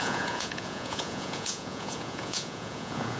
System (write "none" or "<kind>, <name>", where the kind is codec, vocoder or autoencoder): vocoder, Vocos